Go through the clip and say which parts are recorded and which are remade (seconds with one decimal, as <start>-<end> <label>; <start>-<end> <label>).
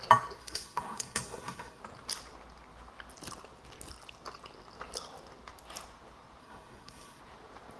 0.0-0.4 recorded; 0.4-1.8 remade; 1.8-6.4 recorded; 6.4-7.2 remade; 7.2-7.8 recorded